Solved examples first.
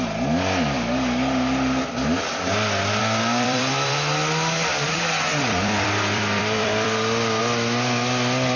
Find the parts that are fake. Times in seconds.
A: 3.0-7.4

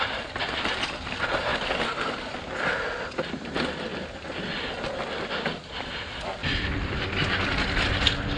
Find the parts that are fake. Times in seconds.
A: 0.0-1.5; 3.3-3.9; 5.5-8.4

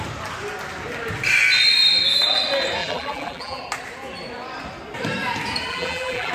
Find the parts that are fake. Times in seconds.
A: 2.8-3.6; 5.7-6.3

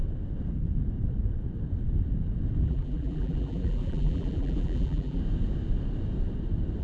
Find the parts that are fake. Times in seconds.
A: 2.6-5.2

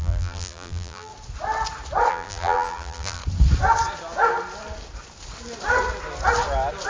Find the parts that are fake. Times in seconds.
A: 0.0-1.1; 2.1-3.2

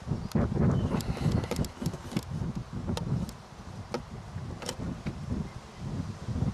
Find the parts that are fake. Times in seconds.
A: none

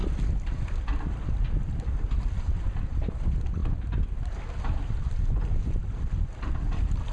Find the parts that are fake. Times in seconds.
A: none